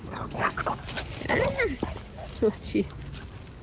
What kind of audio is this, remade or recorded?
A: recorded